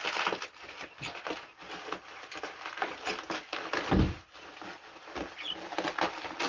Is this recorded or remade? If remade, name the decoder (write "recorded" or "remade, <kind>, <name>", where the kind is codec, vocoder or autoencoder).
recorded